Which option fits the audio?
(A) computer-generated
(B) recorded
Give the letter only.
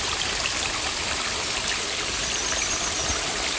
B